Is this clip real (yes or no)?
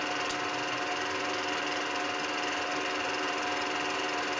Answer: yes